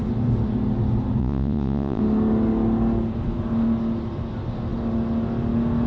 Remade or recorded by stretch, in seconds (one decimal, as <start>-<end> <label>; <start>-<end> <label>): 0.0-1.2 recorded; 1.2-2.0 remade; 2.0-5.9 recorded